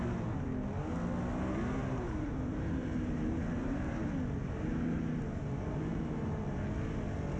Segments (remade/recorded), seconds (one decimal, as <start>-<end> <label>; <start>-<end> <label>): 0.0-1.8 recorded; 1.8-4.0 remade; 4.0-4.4 recorded; 4.4-6.6 remade; 6.6-7.4 recorded